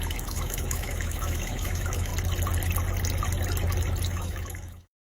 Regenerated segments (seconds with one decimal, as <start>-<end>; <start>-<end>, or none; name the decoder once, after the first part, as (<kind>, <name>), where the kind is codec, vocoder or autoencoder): 0.0-2.1 (autoencoder, DAC-VAE); 4.1-5.2